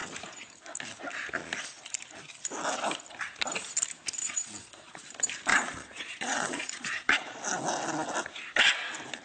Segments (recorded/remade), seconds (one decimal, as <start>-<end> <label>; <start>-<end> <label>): 0.0-4.2 recorded; 4.2-5.0 remade; 5.0-5.5 recorded; 5.5-7.4 remade; 7.4-9.2 recorded